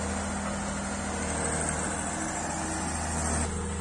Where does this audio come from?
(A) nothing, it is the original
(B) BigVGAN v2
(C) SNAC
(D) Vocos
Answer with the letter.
A